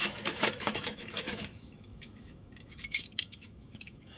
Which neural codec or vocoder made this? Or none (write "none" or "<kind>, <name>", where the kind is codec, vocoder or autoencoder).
autoencoder, DAC-VAE